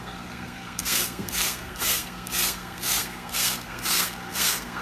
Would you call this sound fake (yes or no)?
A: yes